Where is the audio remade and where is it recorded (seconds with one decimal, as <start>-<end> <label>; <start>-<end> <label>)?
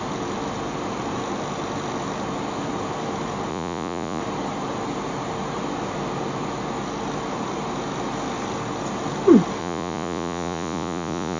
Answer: 0.0-3.5 recorded; 3.5-4.2 remade; 4.2-9.6 recorded; 9.6-11.4 remade